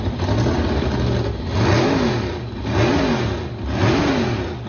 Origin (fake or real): real